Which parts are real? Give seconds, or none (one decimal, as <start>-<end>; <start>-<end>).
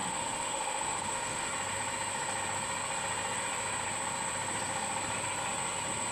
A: 1.5-6.1